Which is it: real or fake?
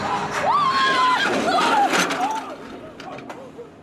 real